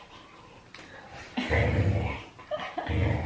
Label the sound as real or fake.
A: real